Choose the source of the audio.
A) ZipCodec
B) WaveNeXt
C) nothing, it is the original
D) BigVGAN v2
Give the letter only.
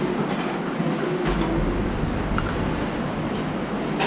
C